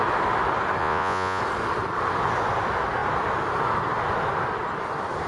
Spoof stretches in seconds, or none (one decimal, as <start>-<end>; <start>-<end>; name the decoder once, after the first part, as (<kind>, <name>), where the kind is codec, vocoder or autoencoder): 0.8-1.4 (vocoder, Vocos)